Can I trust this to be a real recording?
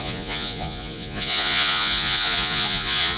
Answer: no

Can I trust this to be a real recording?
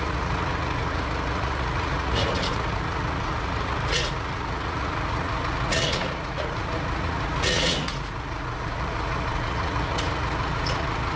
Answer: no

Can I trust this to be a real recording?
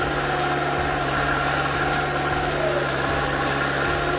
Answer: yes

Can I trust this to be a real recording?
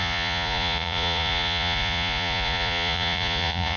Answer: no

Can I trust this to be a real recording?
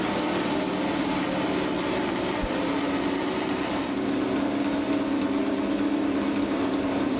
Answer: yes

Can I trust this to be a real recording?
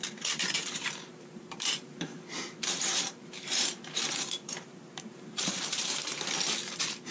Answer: no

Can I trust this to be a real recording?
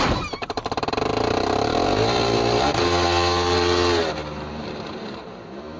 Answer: no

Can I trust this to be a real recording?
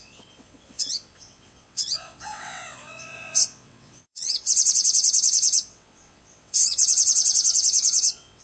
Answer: no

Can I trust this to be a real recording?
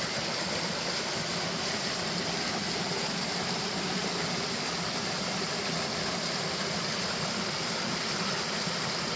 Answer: yes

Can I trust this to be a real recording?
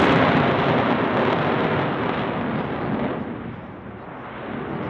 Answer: yes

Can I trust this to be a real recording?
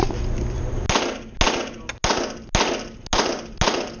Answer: yes